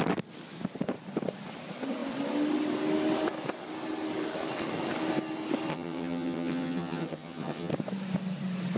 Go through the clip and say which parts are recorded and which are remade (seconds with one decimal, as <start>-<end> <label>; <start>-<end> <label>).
0.0-5.7 recorded; 5.7-7.7 remade; 7.7-8.8 recorded